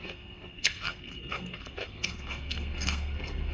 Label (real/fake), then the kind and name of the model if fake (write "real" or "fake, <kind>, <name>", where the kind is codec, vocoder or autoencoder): fake, codec, SNAC